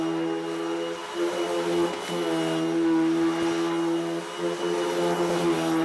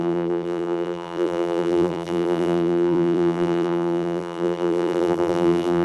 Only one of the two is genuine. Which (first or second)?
first